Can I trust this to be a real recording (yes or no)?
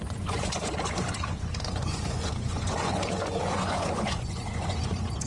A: no